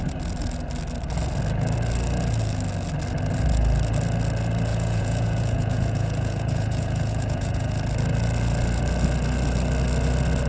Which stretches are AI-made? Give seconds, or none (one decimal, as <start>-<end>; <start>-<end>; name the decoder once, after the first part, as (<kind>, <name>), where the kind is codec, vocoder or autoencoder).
4.7-7.7 (vocoder, Vocos)

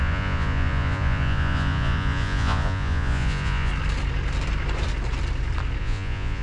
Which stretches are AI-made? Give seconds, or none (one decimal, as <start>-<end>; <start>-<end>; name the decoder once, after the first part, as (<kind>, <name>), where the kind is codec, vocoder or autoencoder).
0.0-3.7 (vocoder, Vocos); 5.8-6.4

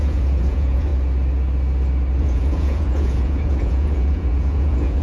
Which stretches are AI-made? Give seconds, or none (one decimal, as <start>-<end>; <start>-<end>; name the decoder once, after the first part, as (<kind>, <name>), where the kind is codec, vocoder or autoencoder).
0.0-0.9 (vocoder, Vocos); 2.2-5.0

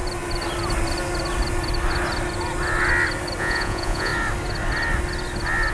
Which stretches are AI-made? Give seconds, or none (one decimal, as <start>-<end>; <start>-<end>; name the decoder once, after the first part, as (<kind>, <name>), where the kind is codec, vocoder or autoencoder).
3.4-4.1 (vocoder, Vocos)

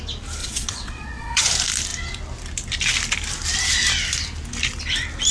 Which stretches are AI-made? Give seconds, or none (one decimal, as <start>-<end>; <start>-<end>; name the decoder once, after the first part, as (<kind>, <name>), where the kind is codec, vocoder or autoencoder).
0.4-1.5 (vocoder, Vocos)